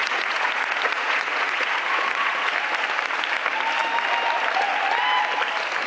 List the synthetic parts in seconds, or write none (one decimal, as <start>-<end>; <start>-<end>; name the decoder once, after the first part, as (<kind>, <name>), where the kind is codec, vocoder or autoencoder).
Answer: 0.0-2.5 (vocoder, Vocos)